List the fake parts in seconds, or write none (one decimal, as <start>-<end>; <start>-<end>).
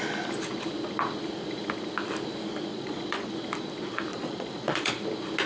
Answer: 2.7-3.3; 4.1-4.9